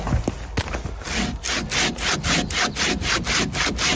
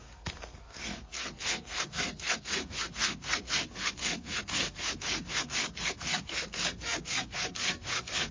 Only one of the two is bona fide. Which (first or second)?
first